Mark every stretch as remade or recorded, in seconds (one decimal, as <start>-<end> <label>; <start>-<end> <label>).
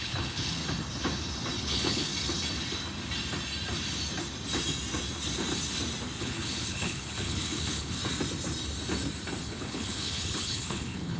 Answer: 0.0-0.6 remade; 0.6-1.6 recorded; 1.6-2.1 remade; 2.1-6.2 recorded; 6.2-8.0 remade; 8.0-9.4 recorded; 9.4-11.2 remade